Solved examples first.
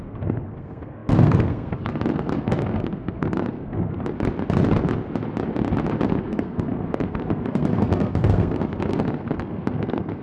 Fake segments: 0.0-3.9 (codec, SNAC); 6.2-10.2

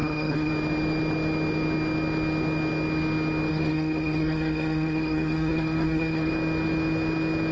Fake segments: 0.0-0.5 (codec, SNAC); 3.5-6.3